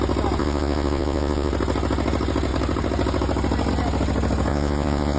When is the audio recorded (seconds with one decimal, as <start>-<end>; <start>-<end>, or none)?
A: 0.0-0.4; 1.5-4.5